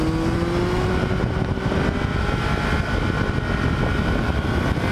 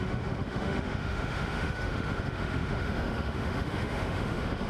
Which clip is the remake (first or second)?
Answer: second